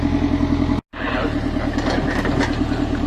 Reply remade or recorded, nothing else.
recorded